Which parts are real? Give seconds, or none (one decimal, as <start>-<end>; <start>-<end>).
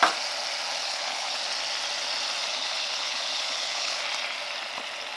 0.0-0.8; 1.4-2.5; 4.0-5.2